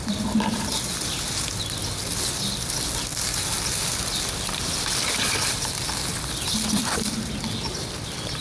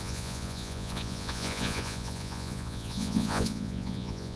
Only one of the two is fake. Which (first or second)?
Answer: second